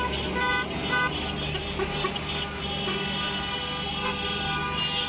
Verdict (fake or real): real